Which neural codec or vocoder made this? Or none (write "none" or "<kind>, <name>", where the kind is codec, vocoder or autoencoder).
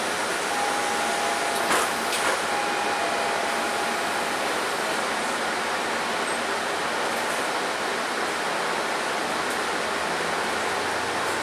none